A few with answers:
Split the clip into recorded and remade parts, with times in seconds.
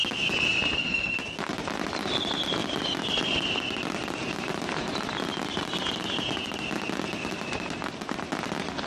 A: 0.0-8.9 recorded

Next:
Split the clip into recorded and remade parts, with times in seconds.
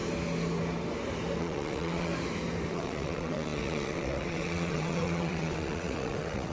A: 0.0-1.4 recorded; 1.4-2.1 remade; 2.1-2.7 recorded; 2.7-6.5 remade